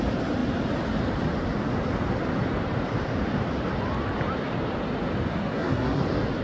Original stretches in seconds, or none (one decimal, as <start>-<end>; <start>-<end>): 0.0-5.3; 6.0-6.4